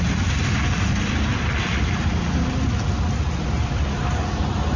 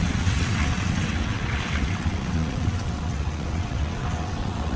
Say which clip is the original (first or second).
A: first